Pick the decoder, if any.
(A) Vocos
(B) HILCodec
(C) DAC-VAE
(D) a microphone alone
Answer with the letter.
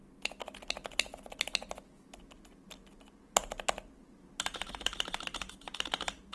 D